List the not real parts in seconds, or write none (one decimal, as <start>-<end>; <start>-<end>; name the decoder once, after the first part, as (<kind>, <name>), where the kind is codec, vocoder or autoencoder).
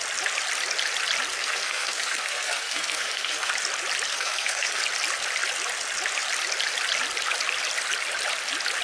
1.3-3.5 (codec, SNAC); 4.1-4.8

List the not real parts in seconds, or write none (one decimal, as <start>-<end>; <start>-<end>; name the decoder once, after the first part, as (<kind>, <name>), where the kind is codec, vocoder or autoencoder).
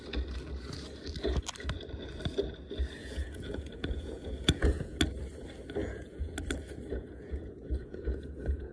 3.0-5.0 (vocoder, Vocos); 5.8-6.3; 6.9-8.7